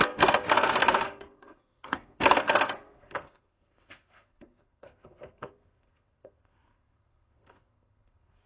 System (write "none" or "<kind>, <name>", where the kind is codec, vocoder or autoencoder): codec, SNAC